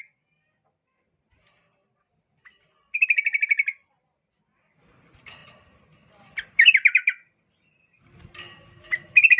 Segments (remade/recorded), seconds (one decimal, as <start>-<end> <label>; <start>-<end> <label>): 0.0-1.8 recorded; 1.8-4.0 remade; 4.0-5.4 recorded; 5.4-8.0 remade; 8.0-9.4 recorded